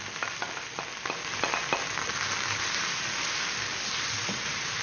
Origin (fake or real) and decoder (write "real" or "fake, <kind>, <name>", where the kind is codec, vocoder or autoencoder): real